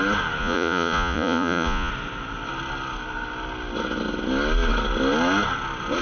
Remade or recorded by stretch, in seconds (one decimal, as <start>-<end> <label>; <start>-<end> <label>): 0.0-0.4 recorded; 0.4-1.9 remade; 1.9-6.0 recorded